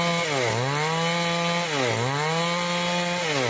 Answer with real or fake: real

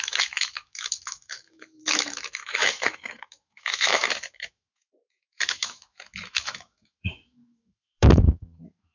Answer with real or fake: fake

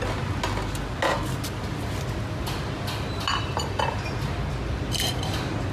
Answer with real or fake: real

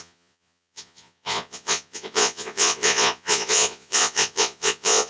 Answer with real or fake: fake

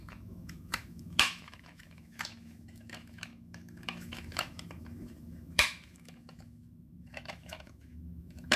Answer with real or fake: fake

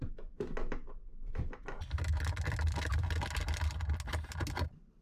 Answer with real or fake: real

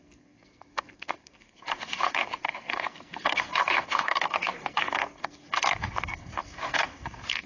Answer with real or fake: fake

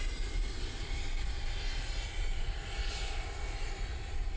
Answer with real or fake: fake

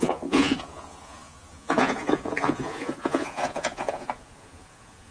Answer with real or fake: fake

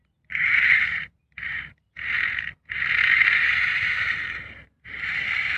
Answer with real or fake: fake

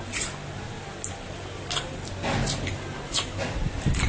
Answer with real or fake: real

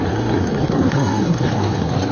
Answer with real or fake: fake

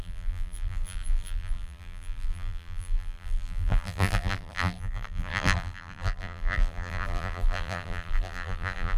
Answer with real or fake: fake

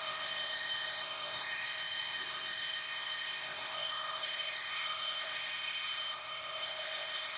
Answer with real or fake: fake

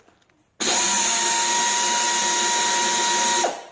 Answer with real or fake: real